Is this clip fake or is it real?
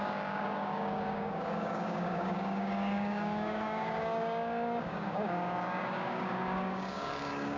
fake